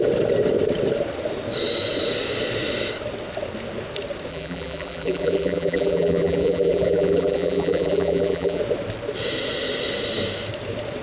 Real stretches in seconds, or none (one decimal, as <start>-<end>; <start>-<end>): 0.0-4.3; 8.6-11.0